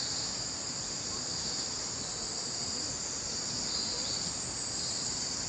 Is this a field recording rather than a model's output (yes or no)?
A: yes